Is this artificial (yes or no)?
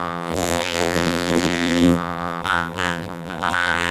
yes